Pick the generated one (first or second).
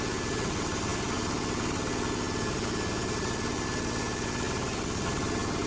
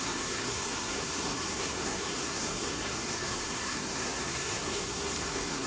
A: second